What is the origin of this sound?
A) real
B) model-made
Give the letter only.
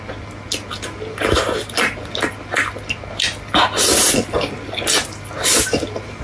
A